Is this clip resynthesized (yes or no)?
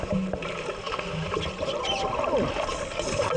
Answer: no